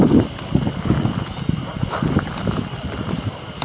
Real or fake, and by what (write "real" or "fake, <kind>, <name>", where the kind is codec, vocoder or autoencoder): real